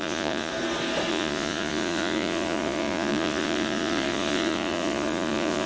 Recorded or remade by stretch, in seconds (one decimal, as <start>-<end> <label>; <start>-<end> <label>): 0.0-0.5 remade; 0.5-1.1 recorded; 1.1-5.7 remade